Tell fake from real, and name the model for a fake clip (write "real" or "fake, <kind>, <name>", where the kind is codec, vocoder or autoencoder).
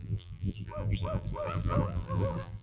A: fake, vocoder, BigVGAN v2